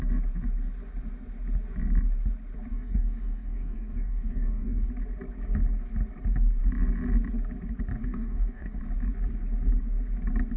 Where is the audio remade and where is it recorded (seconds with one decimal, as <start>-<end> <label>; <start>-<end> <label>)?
0.0-2.7 recorded; 2.7-4.9 remade; 4.9-8.0 recorded; 8.0-8.8 remade; 8.8-10.6 recorded